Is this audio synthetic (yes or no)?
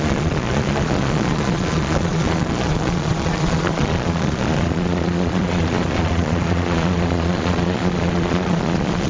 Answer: yes